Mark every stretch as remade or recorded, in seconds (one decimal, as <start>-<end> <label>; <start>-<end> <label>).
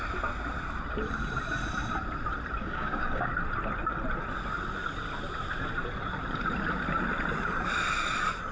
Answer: 0.0-2.6 recorded; 2.6-3.3 remade; 3.3-8.5 recorded